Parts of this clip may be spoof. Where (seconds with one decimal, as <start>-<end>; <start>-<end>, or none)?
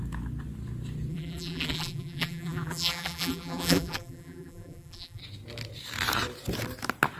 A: 1.1-5.2